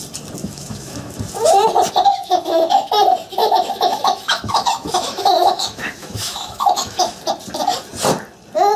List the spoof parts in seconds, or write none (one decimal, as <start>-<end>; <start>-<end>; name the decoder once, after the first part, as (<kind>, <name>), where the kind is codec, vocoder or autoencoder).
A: 0.4-1.2 (autoencoder, DAC-VAE); 2.1-2.9; 3.4-7.2